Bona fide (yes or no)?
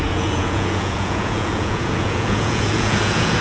no